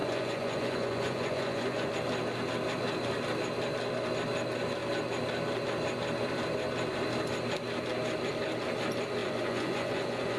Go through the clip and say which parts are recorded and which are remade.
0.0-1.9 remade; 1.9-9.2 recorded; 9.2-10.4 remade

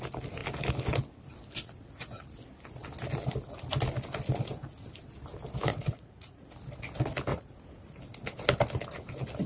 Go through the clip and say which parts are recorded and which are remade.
0.0-5.7 recorded; 5.7-6.5 remade; 6.5-7.3 recorded; 7.3-8.0 remade; 8.0-9.5 recorded

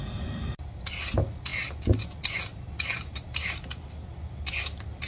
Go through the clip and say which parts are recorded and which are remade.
0.0-5.1 recorded